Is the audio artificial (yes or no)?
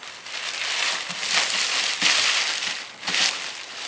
no